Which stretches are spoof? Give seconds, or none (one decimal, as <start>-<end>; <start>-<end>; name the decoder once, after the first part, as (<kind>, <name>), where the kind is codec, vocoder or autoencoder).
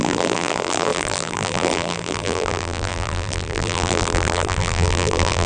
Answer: 0.0-5.5 (vocoder, BigVGAN v2)